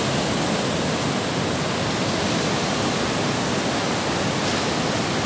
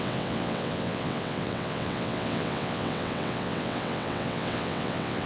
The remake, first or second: second